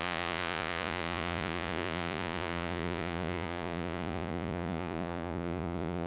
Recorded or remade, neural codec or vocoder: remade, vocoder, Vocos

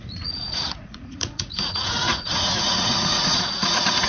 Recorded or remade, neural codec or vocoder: remade, vocoder, Vocos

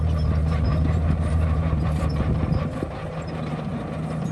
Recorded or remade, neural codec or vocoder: remade, vocoder, BigVGAN v2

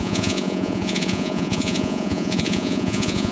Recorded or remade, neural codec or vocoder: remade, vocoder, Vocos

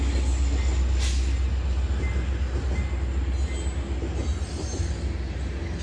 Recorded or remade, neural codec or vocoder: recorded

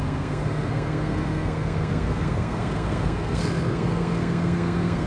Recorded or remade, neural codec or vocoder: remade, codec, SNAC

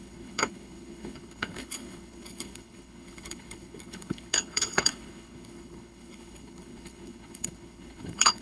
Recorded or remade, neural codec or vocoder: remade, codec, HILCodec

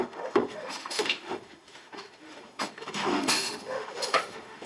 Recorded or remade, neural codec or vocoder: remade, autoencoder, DAC-VAE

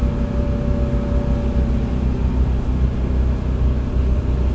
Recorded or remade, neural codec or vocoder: recorded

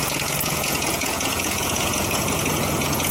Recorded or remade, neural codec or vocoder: remade, vocoder, Vocos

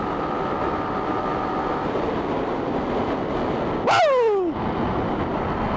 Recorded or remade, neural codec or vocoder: recorded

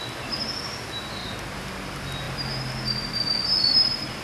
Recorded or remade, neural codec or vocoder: recorded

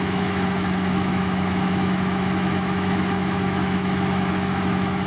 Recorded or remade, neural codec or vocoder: remade, autoencoder, DAC-VAE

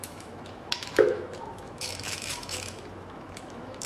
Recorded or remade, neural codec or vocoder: remade, autoencoder, DAC-VAE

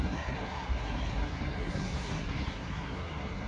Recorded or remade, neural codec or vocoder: remade, codec, SNAC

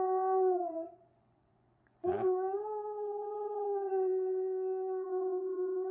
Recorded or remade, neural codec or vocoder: remade, vocoder, Vocos